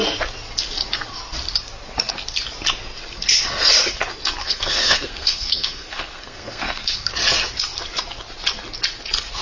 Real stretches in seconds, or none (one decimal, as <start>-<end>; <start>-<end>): 0.0-4.4; 7.1-9.4